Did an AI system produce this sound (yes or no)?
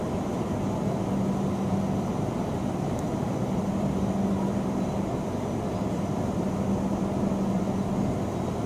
no